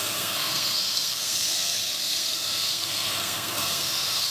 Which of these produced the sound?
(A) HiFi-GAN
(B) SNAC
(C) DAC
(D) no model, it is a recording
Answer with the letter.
B